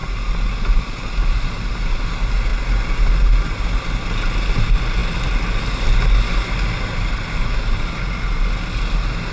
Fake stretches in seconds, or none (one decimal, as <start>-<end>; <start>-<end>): none